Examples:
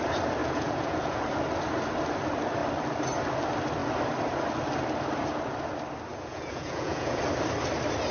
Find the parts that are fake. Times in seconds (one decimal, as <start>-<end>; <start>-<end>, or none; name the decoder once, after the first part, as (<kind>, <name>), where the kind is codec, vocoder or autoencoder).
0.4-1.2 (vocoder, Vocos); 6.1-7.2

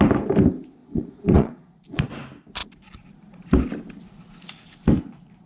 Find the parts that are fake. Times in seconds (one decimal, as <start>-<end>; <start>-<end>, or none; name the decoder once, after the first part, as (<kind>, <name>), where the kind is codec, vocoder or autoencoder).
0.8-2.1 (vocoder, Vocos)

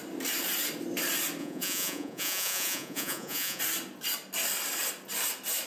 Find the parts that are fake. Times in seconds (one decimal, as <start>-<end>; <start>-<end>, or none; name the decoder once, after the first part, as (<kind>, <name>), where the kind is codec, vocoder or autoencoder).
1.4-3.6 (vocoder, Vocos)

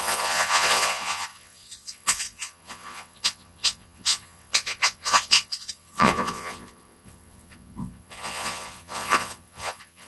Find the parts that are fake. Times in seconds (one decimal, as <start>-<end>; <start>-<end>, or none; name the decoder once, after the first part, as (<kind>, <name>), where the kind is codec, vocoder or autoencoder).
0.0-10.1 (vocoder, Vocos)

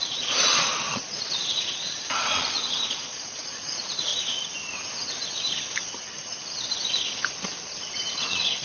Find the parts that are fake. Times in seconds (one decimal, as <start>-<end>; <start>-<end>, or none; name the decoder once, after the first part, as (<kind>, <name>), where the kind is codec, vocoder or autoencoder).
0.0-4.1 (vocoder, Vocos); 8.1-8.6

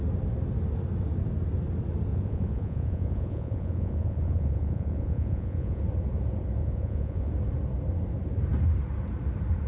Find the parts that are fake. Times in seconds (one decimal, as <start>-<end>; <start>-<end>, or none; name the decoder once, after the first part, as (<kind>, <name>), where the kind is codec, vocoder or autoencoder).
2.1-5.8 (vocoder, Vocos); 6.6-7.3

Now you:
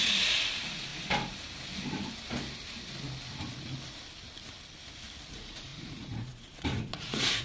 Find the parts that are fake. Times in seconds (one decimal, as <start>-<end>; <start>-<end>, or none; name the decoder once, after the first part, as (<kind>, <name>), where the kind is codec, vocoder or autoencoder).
0.0-0.9 (vocoder, Vocos); 5.3-7.4